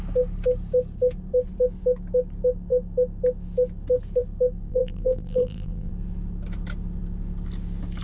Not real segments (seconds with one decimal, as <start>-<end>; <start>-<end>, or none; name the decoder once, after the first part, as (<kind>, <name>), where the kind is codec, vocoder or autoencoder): 4.7-5.9 (vocoder, BigVGAN v2)